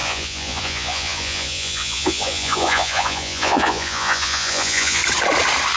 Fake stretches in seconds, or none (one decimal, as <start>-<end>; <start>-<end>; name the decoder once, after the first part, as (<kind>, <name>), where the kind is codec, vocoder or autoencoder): 0.0-5.0 (vocoder, Vocos)